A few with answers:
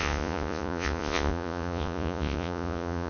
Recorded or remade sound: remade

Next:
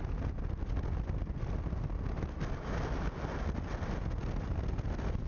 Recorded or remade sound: recorded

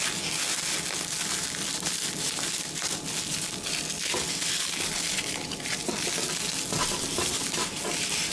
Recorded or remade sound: recorded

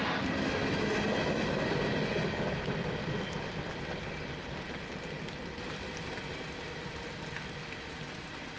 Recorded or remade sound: recorded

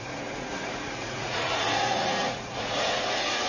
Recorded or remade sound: remade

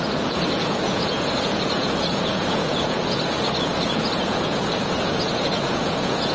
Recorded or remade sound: remade